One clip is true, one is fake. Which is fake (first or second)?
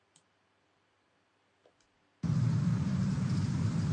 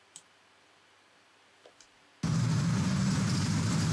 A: first